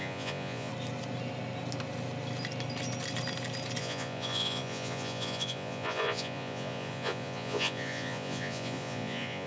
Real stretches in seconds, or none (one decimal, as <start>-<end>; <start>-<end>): 0.7-3.8